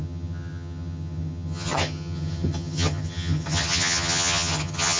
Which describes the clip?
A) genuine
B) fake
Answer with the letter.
B